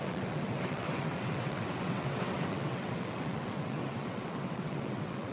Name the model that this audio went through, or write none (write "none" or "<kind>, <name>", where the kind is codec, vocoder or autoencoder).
vocoder, WaveNeXt